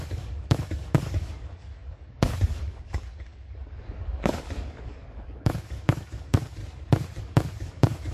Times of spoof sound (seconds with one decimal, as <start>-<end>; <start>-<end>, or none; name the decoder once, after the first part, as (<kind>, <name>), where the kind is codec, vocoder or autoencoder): 0.0-6.6 (codec, DAC); 7.2-8.1